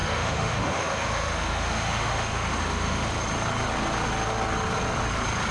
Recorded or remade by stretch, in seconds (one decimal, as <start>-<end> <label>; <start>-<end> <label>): 0.0-3.1 remade; 3.1-5.5 recorded